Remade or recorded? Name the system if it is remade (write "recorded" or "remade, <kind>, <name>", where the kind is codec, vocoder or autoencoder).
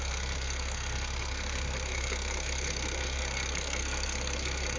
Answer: remade, codec, SNAC